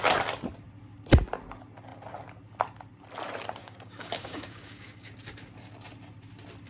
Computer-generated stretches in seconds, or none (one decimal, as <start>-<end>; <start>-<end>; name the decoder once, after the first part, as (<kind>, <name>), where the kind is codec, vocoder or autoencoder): 3.6-5.1 (codec, DAC)